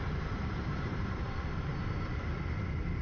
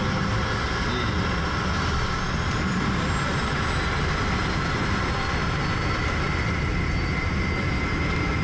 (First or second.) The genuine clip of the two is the second